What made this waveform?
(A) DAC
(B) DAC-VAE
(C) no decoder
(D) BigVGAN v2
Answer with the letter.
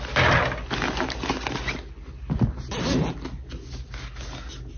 C